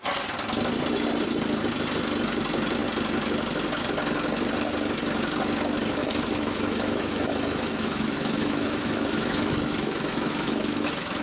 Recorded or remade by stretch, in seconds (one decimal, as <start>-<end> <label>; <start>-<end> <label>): 0.0-6.0 recorded; 6.0-11.2 remade